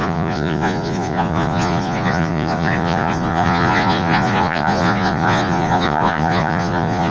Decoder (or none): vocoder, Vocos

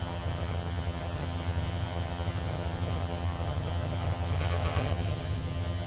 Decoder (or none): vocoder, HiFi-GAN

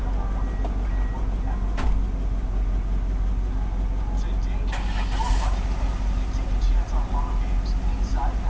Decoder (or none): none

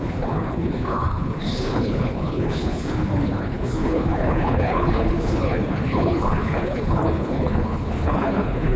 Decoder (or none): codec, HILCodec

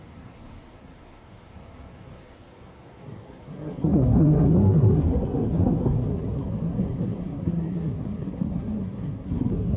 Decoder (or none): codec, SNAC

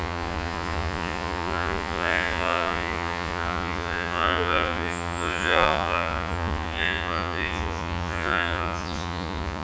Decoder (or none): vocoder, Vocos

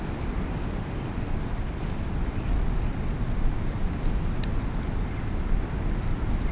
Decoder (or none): none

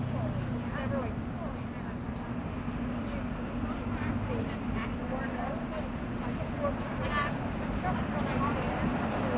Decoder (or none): none